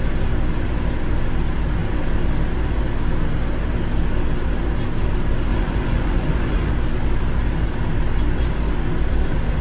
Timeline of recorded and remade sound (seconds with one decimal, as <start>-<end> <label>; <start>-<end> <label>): 0.0-5.5 recorded; 5.5-6.7 remade; 6.7-9.6 recorded